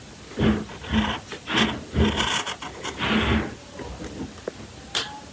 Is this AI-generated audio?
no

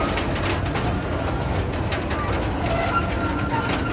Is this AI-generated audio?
no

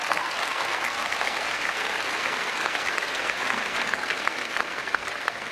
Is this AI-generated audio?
yes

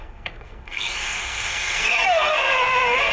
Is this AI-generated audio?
yes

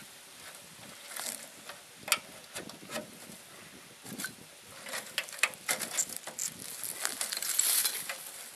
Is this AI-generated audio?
no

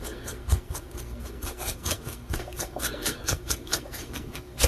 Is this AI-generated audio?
yes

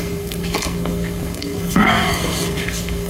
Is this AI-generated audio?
yes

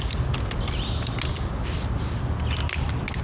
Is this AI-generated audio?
no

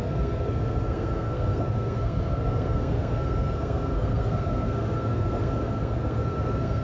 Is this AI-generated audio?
yes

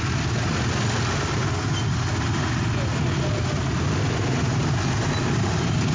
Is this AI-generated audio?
no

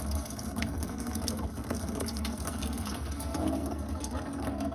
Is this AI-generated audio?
yes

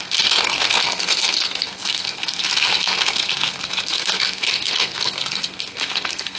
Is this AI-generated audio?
yes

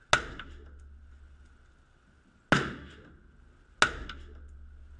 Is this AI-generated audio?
no